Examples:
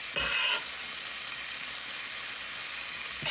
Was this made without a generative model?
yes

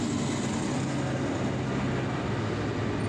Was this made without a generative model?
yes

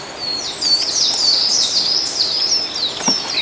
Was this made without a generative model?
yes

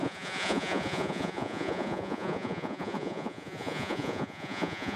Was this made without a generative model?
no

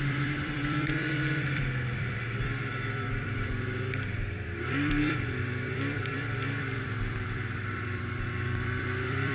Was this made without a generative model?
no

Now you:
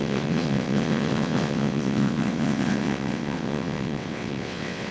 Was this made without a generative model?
no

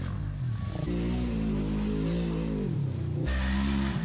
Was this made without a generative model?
yes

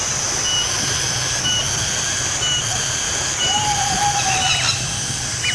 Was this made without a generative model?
no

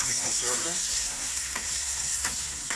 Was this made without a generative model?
no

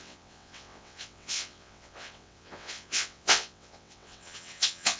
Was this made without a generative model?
no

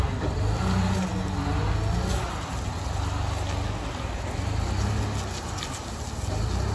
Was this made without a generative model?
yes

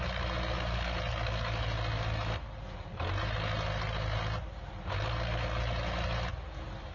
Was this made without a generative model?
yes